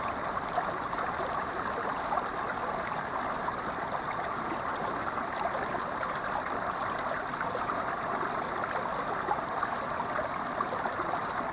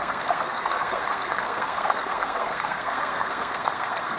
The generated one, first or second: second